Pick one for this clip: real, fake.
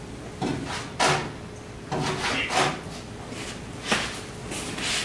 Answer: real